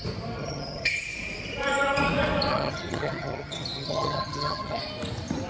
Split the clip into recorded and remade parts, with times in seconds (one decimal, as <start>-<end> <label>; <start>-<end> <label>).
0.0-0.4 recorded; 0.4-1.0 remade; 1.0-2.5 recorded; 2.5-4.8 remade; 4.8-5.5 recorded